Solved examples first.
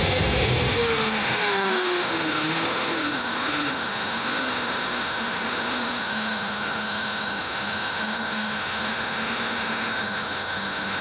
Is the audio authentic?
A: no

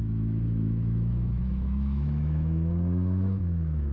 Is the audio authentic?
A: no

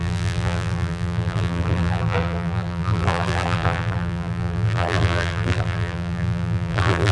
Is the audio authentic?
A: no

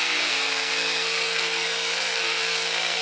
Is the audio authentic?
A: no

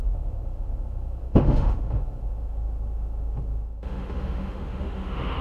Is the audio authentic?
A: no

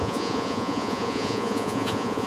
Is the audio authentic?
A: no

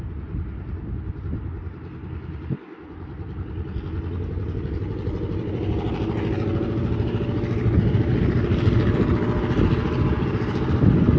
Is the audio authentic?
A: yes